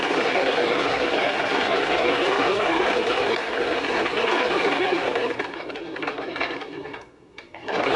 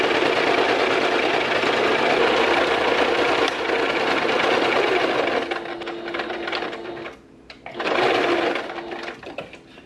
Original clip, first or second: second